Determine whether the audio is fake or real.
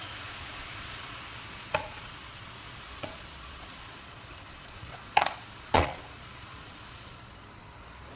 fake